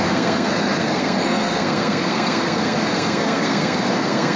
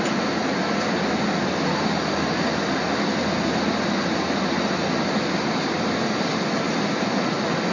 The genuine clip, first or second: second